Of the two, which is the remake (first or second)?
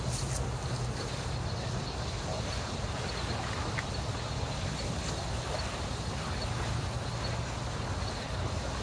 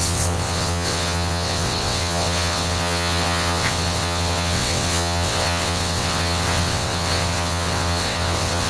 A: second